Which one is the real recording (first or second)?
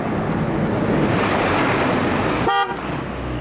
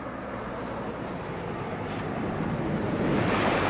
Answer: first